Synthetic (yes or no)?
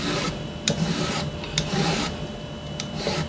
yes